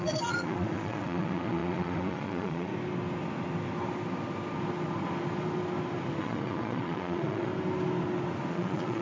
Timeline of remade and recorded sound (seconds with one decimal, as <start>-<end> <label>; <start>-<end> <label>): 0.0-2.7 remade; 2.7-6.2 recorded; 6.2-7.5 remade; 7.5-8.5 recorded; 8.5-9.0 remade